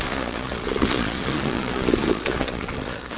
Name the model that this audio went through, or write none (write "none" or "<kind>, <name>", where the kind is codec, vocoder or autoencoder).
vocoder, Vocos